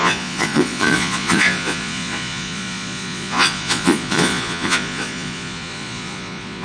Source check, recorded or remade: remade